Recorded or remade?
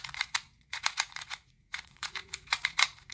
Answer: remade